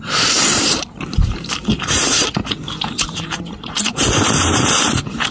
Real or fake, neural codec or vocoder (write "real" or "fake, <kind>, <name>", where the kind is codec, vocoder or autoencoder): fake, vocoder, BigVGAN v2